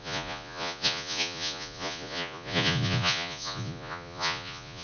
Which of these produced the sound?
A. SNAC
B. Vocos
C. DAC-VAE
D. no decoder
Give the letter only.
B